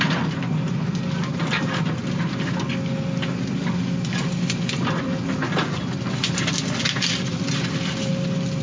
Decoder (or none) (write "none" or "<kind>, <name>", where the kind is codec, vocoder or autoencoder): none